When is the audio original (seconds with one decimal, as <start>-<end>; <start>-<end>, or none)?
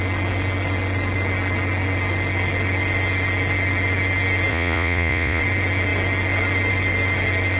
0.0-4.5; 5.4-7.6